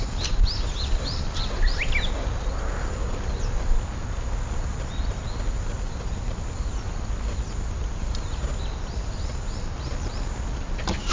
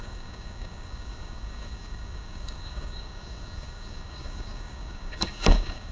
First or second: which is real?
first